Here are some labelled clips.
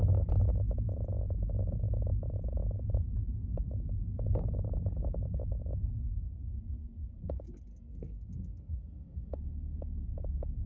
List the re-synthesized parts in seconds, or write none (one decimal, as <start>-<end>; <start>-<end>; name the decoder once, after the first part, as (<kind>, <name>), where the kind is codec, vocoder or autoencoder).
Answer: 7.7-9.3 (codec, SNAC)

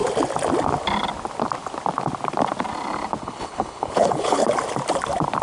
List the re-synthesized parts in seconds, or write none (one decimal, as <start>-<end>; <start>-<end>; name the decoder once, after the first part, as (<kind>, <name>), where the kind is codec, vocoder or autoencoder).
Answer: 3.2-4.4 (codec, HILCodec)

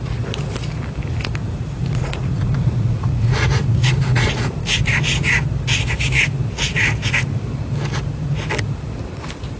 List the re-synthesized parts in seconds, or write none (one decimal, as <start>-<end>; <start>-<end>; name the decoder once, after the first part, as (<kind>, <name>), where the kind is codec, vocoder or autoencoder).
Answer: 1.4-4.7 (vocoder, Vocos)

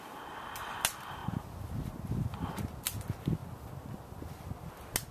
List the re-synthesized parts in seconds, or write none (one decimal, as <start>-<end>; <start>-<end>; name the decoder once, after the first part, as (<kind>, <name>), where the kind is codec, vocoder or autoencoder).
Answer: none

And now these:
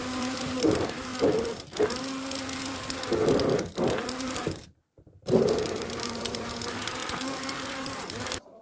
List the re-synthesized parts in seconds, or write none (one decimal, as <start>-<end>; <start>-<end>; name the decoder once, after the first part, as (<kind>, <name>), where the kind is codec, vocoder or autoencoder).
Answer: 0.0-1.1 (vocoder, BigVGAN v2); 4.2-7.0; 7.7-8.6

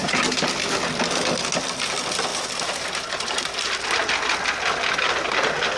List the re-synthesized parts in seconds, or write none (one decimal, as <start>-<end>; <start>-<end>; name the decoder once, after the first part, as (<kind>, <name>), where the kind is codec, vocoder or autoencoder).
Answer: none